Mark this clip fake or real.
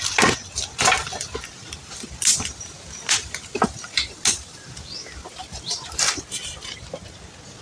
real